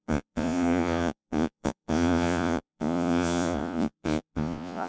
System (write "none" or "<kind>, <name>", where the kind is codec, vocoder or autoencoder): vocoder, Vocos